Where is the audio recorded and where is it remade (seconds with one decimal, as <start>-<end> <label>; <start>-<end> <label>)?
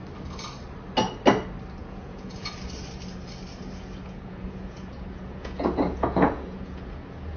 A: 0.0-1.8 recorded; 1.8-2.5 remade; 2.5-3.5 recorded; 3.5-7.4 remade